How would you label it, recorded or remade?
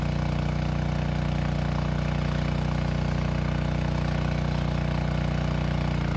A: recorded